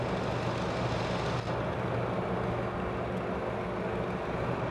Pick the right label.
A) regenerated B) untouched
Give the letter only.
B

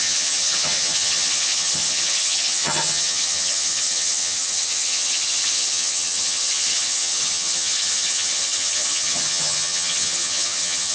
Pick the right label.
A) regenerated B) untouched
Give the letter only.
A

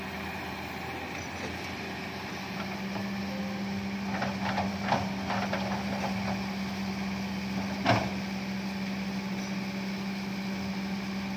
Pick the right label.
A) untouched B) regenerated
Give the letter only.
A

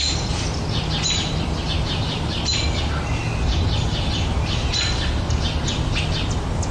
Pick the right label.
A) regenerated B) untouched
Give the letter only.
B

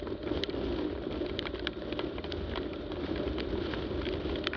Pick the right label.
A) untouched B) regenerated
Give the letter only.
A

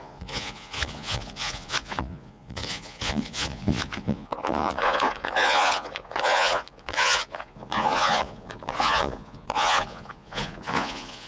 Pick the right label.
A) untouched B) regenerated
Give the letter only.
B